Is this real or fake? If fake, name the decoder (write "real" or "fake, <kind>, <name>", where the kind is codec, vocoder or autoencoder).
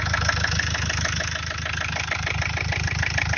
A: real